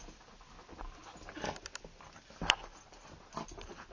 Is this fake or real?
real